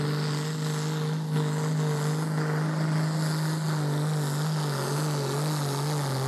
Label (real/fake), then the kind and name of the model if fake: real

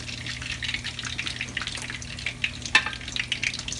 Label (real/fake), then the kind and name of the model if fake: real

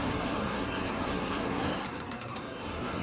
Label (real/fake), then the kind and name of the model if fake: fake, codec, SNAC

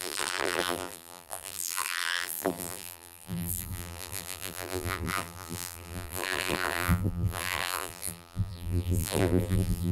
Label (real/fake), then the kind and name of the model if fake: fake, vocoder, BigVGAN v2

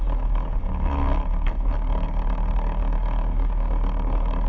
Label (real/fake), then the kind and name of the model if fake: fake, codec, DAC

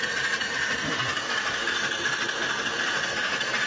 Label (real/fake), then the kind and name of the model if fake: real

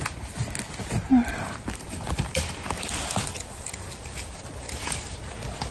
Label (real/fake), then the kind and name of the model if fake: real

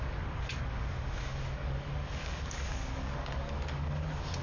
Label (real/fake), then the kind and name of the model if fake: fake, codec, DAC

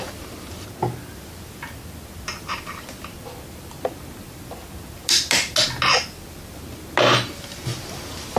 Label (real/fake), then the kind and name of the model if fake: real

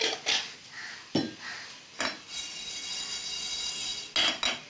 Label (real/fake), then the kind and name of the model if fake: real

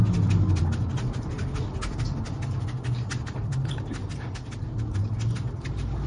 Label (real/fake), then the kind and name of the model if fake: real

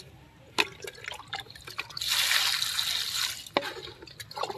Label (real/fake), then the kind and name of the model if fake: real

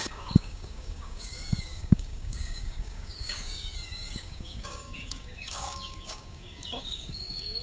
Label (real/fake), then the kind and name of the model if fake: fake, codec, DAC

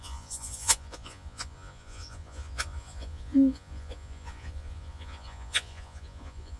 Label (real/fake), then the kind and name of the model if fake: fake, vocoder, Vocos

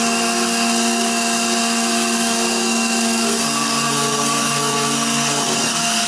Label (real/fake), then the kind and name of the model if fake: fake, codec, SNAC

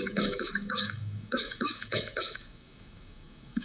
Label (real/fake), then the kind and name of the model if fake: fake, autoencoder, DAC-VAE